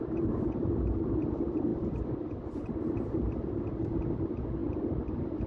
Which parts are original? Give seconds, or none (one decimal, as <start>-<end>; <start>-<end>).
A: 0.0-1.7; 2.8-4.6; 5.1-5.5